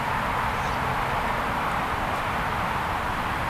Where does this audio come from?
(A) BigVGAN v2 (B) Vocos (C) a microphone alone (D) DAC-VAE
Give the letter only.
C